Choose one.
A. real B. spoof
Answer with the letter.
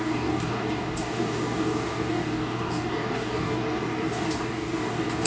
B